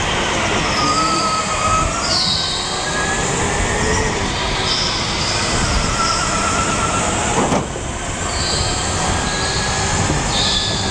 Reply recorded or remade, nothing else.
recorded